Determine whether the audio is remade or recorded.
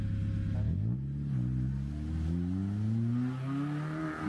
recorded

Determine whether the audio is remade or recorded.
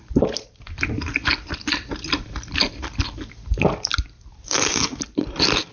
remade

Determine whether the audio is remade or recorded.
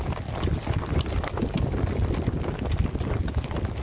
recorded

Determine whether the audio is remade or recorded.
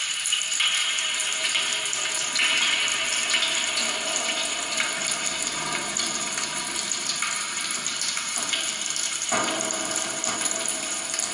remade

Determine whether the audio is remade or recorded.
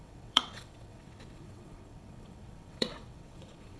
remade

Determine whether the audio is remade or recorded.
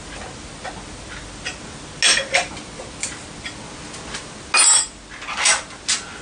recorded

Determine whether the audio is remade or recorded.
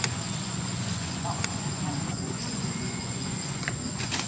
remade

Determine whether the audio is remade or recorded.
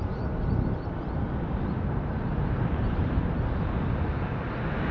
recorded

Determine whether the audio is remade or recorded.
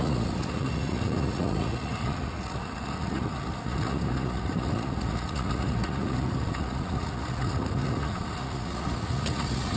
remade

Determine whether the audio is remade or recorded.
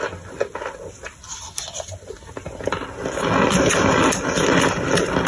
recorded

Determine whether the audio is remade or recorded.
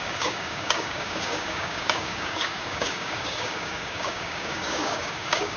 remade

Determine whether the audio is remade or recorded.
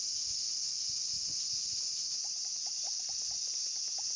recorded